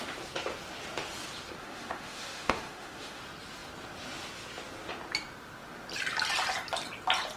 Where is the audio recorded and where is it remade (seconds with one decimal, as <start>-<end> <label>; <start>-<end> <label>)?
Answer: 0.0-1.6 recorded; 1.6-3.2 remade; 3.2-7.4 recorded